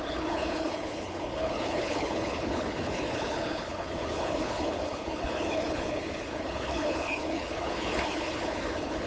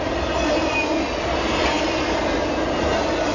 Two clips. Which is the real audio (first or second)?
second